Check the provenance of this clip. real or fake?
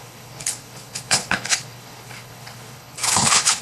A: fake